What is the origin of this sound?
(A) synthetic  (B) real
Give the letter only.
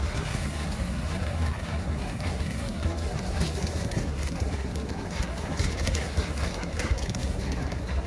A